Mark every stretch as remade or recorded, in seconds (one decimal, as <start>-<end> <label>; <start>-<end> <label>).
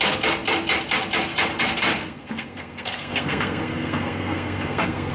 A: 0.0-2.0 recorded; 2.0-5.1 remade